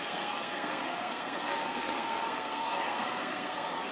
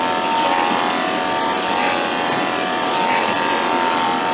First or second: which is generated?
first